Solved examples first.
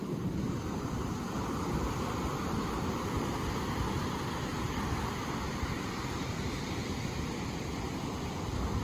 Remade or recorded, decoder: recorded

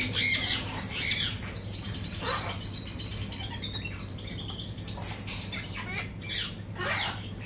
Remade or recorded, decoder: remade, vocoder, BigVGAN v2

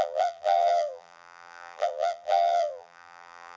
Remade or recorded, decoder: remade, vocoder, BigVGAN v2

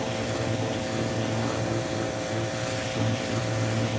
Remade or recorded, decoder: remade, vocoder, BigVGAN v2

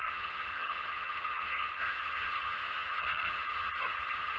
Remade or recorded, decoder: remade, vocoder, HiFi-GAN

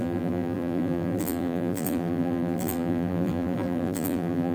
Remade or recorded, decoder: remade, vocoder, BigVGAN v2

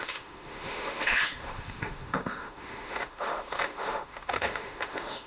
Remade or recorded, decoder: remade, autoencoder, DAC-VAE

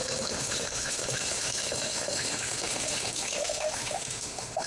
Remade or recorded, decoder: remade, autoencoder, DAC-VAE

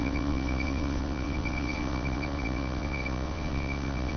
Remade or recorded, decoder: remade, vocoder, WaveNeXt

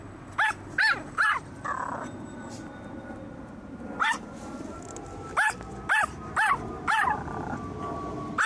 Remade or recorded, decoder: recorded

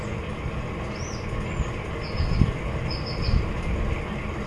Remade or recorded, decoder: recorded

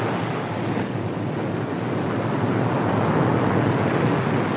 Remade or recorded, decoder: recorded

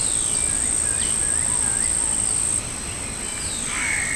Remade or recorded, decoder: recorded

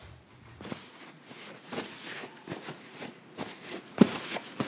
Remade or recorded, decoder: remade, vocoder, Vocos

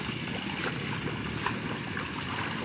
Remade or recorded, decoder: recorded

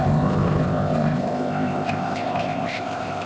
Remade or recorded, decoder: remade, codec, ZipCodec